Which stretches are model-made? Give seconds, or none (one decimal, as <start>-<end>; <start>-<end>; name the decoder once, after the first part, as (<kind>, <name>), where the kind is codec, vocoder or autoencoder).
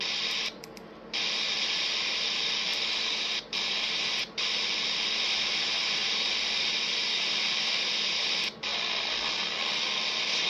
2.7-4.4 (vocoder, BigVGAN v2)